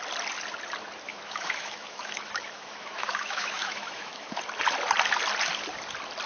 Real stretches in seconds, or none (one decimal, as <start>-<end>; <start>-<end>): 0.0-1.1; 4.4-6.3